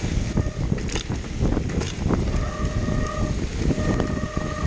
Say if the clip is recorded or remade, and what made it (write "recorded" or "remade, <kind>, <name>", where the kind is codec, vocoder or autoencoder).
recorded